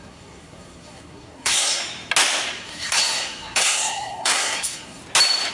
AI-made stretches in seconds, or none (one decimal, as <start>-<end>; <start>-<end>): 0.0-1.8; 2.6-5.0